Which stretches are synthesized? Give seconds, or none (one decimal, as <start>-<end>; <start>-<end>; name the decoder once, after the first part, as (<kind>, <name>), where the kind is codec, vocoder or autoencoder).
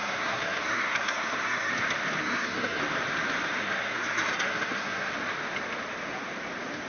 0.0-1.7 (codec, SNAC); 2.2-2.8; 3.6-5.1